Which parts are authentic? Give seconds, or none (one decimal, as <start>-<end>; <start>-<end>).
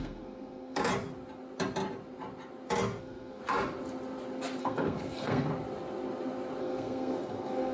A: 0.8-3.0; 3.4-4.6; 5.5-6.6